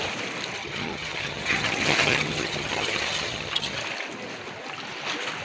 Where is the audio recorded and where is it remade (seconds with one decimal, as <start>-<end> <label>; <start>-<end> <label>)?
0.0-0.6 recorded; 0.6-3.8 remade; 3.8-5.4 recorded